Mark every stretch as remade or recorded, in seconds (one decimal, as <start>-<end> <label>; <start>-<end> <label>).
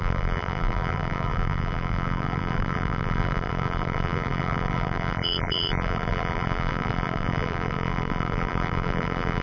0.0-9.4 remade